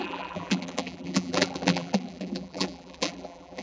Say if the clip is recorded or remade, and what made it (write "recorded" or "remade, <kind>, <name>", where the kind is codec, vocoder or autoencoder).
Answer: remade, vocoder, BigVGAN v2